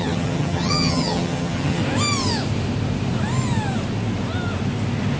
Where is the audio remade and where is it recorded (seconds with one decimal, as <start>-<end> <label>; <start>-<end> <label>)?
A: 0.0-1.8 remade; 1.8-5.2 recorded